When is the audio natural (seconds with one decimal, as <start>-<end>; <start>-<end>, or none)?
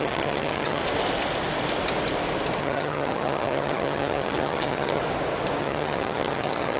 0.8-2.6; 5.0-5.6